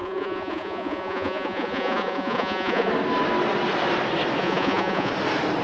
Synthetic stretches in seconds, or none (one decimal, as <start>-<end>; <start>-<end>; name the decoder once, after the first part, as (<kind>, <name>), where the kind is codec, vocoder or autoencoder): 0.0-2.9 (vocoder, Vocos); 4.4-5.1